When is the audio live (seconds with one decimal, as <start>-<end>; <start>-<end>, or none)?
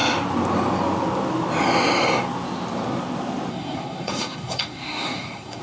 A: 0.0-3.5